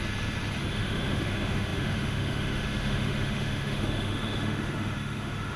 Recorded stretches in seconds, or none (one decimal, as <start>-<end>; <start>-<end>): 0.0-0.7